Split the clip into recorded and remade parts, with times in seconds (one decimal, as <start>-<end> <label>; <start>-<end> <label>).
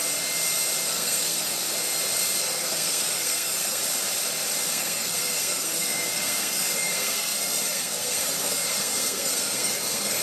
0.0-0.8 recorded; 0.8-1.6 remade; 1.6-2.4 recorded; 2.4-3.8 remade; 3.8-4.7 recorded; 4.7-10.2 remade